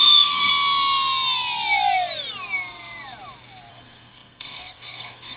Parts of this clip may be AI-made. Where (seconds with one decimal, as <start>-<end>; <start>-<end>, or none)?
0.0-0.5; 3.7-5.4